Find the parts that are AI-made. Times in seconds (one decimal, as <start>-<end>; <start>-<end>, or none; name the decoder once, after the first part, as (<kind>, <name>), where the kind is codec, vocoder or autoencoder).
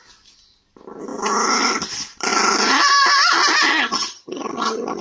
3.7-5.0 (vocoder, HiFi-GAN)